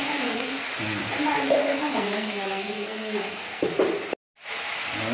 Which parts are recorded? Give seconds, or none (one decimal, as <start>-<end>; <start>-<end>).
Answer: 0.7-1.6; 3.7-5.1